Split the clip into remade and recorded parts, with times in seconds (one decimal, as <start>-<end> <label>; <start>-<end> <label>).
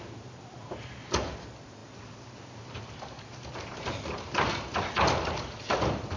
0.0-6.2 recorded